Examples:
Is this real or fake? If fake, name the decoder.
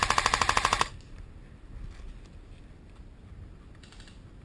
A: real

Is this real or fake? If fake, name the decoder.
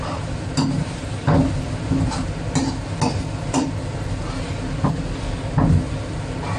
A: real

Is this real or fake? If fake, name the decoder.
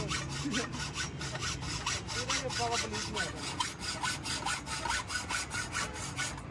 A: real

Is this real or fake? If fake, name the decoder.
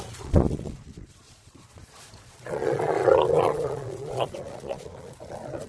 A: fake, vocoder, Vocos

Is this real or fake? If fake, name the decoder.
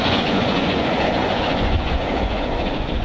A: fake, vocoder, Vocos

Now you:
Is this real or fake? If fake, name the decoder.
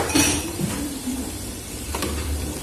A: fake, vocoder, BigVGAN v2